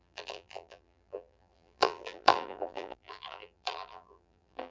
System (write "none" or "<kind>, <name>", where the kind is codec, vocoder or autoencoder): vocoder, BigVGAN v2